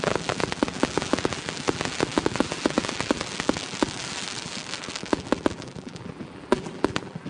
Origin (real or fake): fake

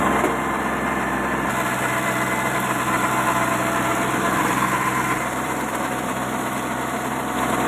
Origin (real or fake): fake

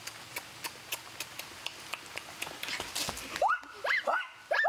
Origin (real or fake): real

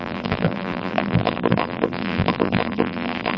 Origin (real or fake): fake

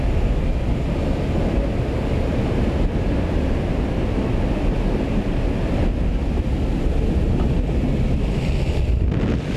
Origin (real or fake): real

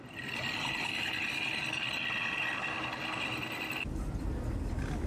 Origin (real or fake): real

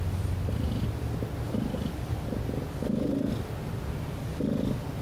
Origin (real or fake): real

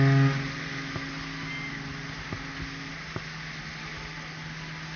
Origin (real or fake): real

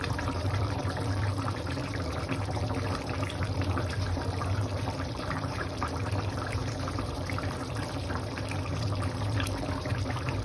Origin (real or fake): fake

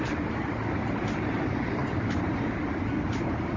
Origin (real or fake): real